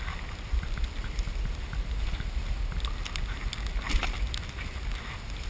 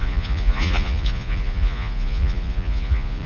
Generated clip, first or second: second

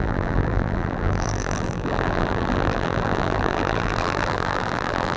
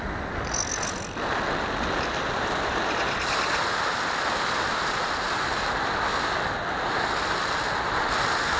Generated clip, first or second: first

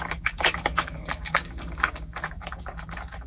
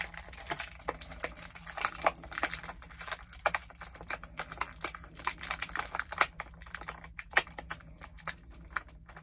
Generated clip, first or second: first